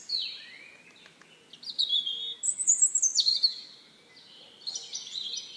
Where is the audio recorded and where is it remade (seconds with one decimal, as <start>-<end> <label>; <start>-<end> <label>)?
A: 0.0-5.6 recorded